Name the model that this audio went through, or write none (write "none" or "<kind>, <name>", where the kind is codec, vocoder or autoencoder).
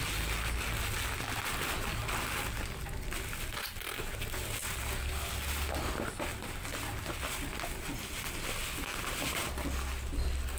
none